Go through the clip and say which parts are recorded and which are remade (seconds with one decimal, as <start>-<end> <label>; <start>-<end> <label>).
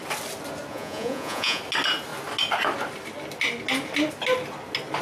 0.0-0.7 recorded; 0.7-1.6 remade; 1.6-5.0 recorded